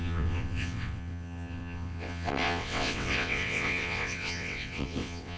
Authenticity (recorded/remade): remade